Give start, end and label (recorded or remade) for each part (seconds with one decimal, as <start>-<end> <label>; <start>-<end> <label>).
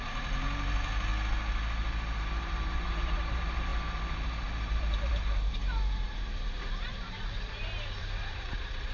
0.0-1.1 remade; 1.1-2.2 recorded; 2.2-8.9 remade